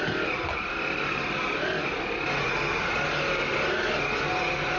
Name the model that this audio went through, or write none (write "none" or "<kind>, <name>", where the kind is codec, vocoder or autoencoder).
none